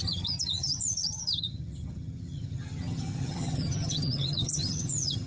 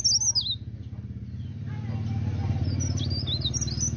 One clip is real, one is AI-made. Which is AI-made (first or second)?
first